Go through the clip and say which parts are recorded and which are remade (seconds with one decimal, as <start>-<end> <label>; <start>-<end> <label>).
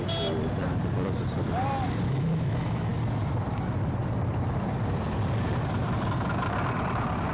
0.0-2.1 recorded; 2.1-2.9 remade; 2.9-7.3 recorded